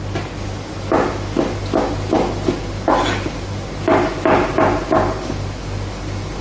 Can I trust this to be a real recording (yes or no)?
yes